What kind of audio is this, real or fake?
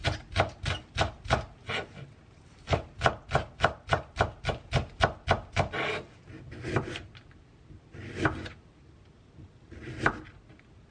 real